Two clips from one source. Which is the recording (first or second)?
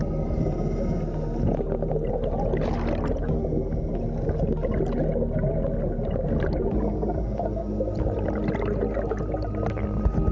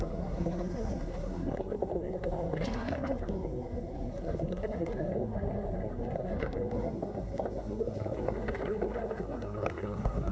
first